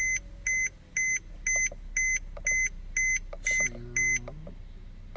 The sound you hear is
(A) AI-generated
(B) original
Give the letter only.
B